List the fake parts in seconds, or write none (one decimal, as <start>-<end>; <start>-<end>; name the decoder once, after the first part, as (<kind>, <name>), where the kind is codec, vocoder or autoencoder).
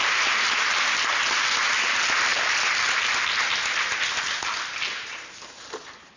none